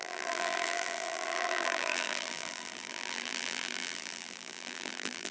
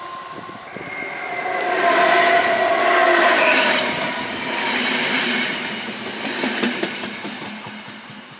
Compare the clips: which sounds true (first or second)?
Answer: second